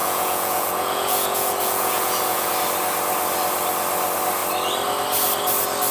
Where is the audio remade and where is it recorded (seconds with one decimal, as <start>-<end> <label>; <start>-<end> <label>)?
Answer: 0.0-2.5 remade; 2.5-5.9 recorded